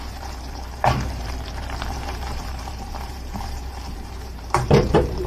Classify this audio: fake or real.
fake